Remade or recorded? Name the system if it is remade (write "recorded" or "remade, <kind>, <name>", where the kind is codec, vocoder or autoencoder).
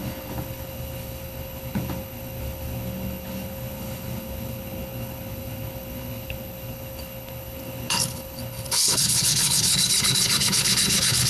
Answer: remade, codec, HILCodec